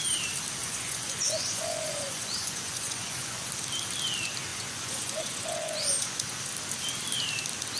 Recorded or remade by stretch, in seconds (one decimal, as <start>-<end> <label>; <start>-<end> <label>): 0.0-0.6 recorded; 0.6-3.5 remade; 3.5-4.5 recorded; 4.5-6.4 remade; 6.4-7.8 recorded

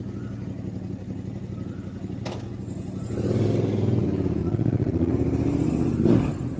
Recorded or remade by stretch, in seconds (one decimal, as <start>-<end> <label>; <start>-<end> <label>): 0.0-4.4 recorded; 4.4-5.1 remade; 5.1-6.6 recorded

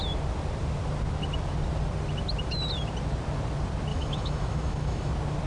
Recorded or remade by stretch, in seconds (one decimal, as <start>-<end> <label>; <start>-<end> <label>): 0.0-3.9 recorded; 3.9-5.1 remade; 5.1-5.5 recorded

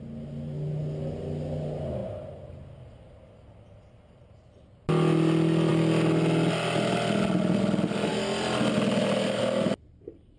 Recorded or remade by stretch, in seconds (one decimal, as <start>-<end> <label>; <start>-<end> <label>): 0.0-10.4 recorded

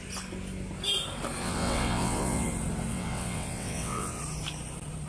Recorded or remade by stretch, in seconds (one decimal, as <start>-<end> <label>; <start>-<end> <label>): 0.0-1.4 recorded; 1.4-2.5 remade; 2.5-2.9 recorded; 2.9-4.2 remade; 4.2-5.1 recorded

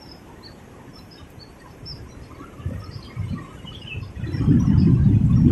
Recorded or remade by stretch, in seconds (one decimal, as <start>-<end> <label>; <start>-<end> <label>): 0.0-0.9 recorded; 0.9-4.2 remade; 4.2-5.5 recorded